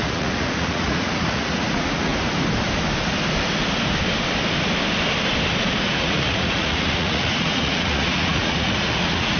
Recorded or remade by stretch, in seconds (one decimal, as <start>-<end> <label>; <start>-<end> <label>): 0.0-2.1 remade; 2.1-5.6 recorded; 5.6-9.4 remade